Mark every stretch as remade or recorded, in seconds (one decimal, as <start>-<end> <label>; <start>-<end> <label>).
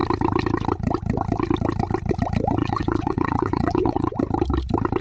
0.0-2.6 recorded; 2.6-4.2 remade; 4.2-5.0 recorded